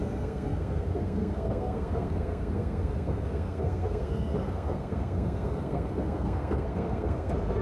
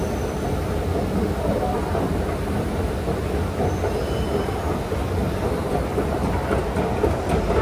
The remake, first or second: first